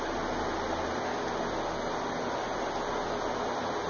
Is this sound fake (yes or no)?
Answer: no